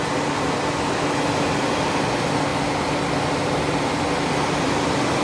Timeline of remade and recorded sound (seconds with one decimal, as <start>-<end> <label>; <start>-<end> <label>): 0.0-5.2 recorded